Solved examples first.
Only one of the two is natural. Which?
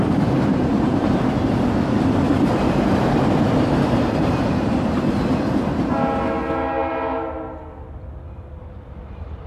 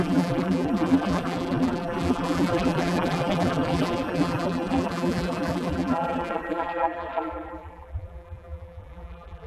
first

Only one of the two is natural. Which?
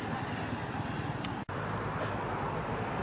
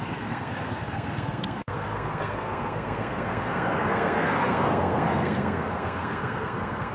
first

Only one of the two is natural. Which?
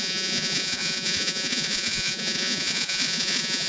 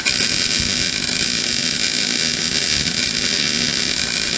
second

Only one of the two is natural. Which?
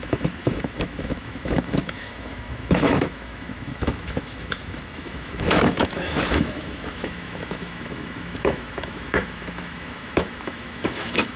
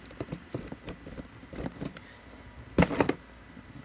second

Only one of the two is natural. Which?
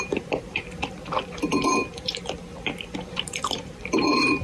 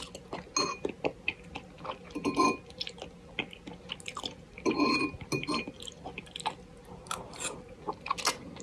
second